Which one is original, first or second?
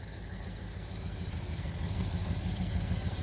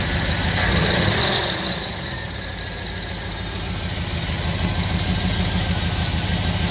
second